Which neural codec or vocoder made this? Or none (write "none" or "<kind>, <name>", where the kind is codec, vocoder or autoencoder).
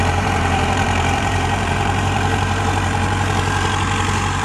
vocoder, BigVGAN v2